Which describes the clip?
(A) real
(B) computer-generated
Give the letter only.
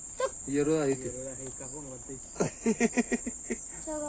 A